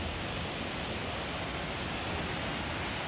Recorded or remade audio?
recorded